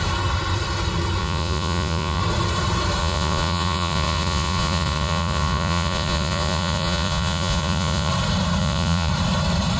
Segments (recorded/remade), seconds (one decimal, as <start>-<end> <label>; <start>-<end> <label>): 0.0-1.2 recorded; 1.2-2.2 remade; 2.2-3.0 recorded; 3.0-8.1 remade; 8.1-8.6 recorded; 8.6-9.1 remade; 9.1-9.8 recorded